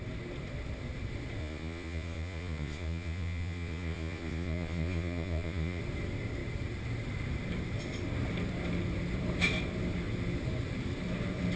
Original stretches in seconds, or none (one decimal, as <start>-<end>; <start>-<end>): 0.0-1.4; 5.8-11.6